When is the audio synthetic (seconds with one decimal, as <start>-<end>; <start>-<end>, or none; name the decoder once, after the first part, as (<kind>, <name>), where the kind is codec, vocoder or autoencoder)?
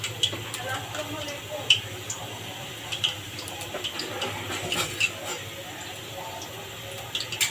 0.8-4.1 (vocoder, BigVGAN v2)